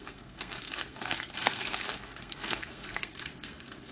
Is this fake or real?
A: fake